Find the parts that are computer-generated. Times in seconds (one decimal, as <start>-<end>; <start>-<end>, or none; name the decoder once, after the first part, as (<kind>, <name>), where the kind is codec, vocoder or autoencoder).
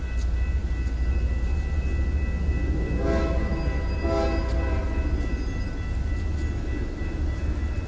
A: none